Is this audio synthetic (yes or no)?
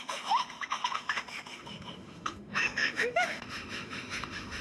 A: yes